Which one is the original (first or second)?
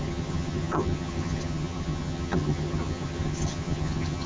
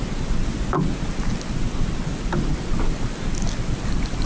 second